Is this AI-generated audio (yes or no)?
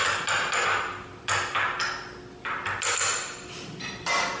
no